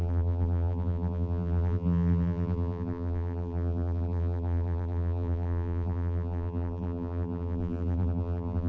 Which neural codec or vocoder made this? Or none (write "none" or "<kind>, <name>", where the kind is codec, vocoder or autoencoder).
vocoder, BigVGAN v2